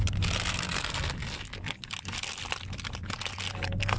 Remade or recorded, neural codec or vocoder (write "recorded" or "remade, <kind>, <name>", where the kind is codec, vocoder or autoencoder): recorded